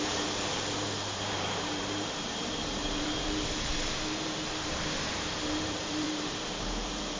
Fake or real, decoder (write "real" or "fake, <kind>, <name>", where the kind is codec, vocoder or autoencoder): fake, vocoder, BigVGAN v2